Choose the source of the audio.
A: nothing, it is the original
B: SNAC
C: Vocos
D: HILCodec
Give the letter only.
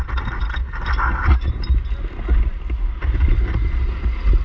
A